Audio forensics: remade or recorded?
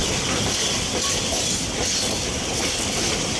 recorded